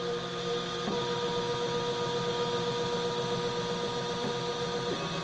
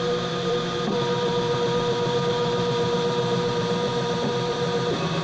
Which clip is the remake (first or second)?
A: second